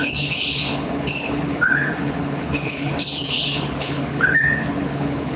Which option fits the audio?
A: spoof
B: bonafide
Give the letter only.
A